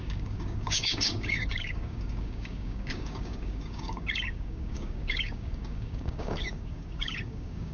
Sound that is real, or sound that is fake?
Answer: fake